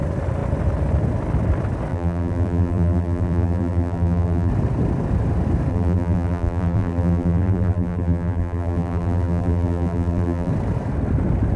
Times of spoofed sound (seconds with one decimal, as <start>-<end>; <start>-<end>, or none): 1.9-4.5; 5.7-10.5